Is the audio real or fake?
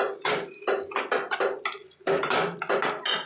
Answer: real